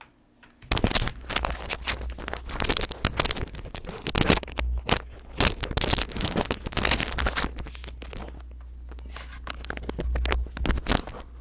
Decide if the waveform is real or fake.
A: real